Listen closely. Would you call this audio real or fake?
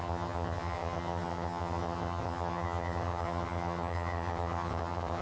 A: fake